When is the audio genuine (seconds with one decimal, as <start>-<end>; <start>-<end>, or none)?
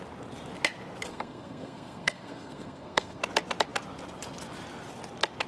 0.0-1.1; 3.2-5.5